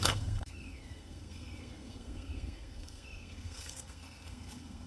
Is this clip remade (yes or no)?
yes